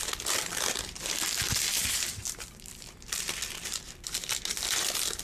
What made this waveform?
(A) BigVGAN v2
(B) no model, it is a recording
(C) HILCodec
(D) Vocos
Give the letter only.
A